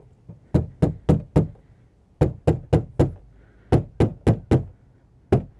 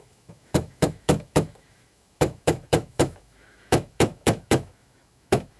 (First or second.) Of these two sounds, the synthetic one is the second